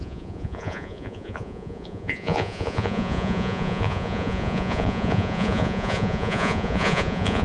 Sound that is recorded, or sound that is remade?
remade